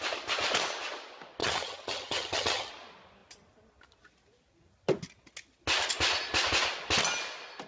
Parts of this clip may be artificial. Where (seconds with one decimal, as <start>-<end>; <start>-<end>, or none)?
1.4-2.7